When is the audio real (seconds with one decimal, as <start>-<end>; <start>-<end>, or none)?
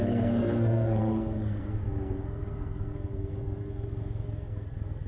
none